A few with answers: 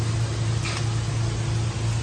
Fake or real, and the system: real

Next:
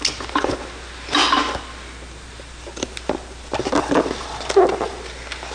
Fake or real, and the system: real